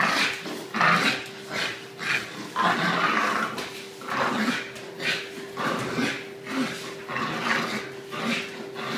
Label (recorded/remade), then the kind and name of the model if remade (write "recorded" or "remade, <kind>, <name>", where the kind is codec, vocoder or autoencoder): recorded